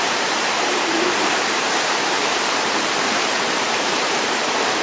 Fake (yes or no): yes